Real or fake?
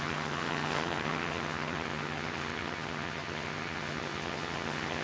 fake